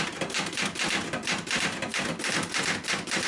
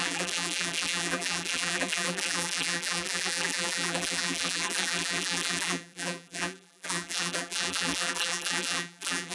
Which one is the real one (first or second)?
first